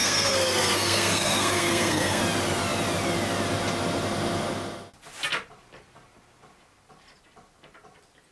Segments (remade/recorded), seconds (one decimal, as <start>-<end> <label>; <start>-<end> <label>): 0.0-2.2 remade; 2.2-8.3 recorded